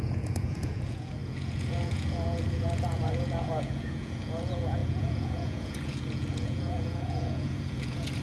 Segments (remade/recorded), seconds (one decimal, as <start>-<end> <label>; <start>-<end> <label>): 0.0-8.2 remade